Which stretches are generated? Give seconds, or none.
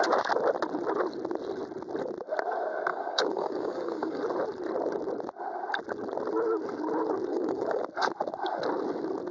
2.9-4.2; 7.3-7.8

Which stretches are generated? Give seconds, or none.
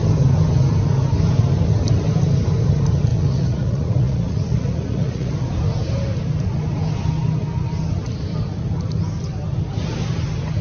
3.1-5.3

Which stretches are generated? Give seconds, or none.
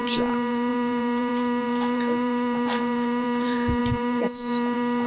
0.0-5.1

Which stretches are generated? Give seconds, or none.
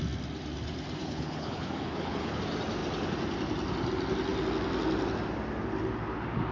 1.0-2.4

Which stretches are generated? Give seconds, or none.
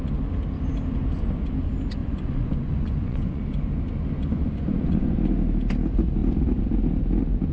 2.0-3.4; 4.3-5.2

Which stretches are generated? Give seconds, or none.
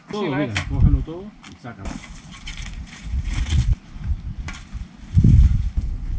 2.5-3.6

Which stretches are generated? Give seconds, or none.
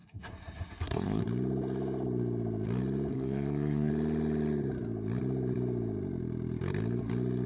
0.0-1.2; 3.1-3.9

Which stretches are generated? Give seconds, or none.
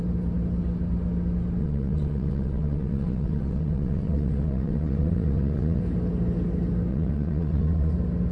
1.6-5.8; 6.9-7.9